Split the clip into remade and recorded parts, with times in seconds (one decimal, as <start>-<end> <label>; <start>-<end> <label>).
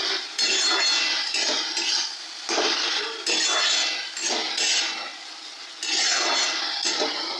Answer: 0.0-7.4 recorded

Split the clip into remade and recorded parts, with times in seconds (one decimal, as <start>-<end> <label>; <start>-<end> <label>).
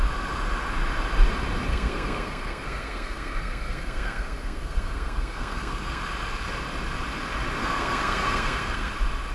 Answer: 0.0-1.7 recorded; 1.7-6.0 remade; 6.0-7.6 recorded; 7.6-8.9 remade; 8.9-9.3 recorded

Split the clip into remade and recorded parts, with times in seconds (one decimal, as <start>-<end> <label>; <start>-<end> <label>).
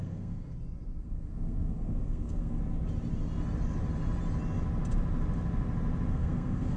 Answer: 0.0-0.4 remade; 0.4-1.0 recorded; 1.0-2.6 remade; 2.6-6.1 recorded; 6.1-6.8 remade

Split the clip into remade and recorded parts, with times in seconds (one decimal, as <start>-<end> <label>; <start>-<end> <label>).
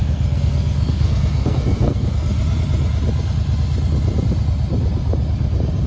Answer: 0.0-2.3 remade; 2.3-5.9 recorded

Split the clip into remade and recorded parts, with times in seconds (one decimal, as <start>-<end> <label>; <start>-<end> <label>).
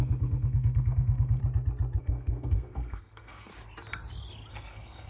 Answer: 0.0-1.4 remade; 1.4-2.0 recorded; 2.0-3.5 remade; 3.5-4.5 recorded; 4.5-5.1 remade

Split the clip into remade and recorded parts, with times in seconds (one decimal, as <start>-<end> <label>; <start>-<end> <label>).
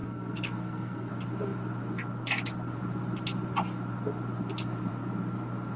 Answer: 0.0-1.1 remade; 1.1-5.8 recorded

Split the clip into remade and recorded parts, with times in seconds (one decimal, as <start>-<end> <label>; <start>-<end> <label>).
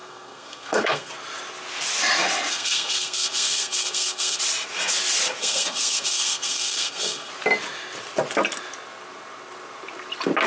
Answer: 0.0-1.1 remade; 1.1-2.5 recorded; 2.5-4.4 remade; 4.4-5.4 recorded; 5.4-7.3 remade; 7.3-10.5 recorded